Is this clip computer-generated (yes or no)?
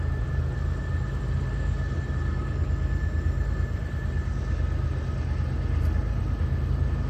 no